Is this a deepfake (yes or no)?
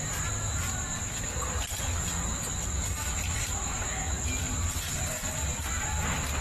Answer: no